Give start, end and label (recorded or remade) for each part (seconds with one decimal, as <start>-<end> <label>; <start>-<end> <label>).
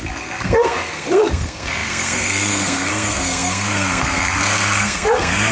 0.0-5.5 remade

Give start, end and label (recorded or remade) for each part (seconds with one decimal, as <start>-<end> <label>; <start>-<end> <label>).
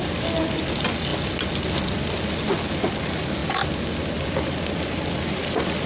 0.0-5.9 recorded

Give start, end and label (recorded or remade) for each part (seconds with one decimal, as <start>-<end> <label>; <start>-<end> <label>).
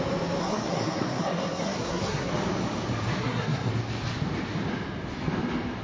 0.0-0.4 recorded; 0.4-2.3 remade; 2.3-3.2 recorded; 3.2-3.7 remade; 3.7-5.8 recorded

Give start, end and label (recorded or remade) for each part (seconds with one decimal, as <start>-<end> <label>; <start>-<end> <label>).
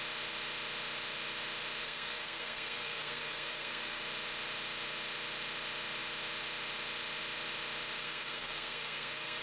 0.0-1.8 recorded; 1.8-4.0 remade; 4.0-8.0 recorded; 8.0-9.4 remade